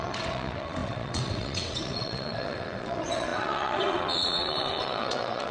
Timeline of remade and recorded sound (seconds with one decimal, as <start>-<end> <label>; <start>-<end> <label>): 0.0-5.5 remade